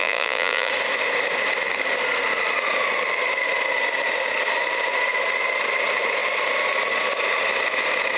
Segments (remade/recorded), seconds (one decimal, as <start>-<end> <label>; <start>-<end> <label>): 0.0-0.7 remade; 0.7-8.2 recorded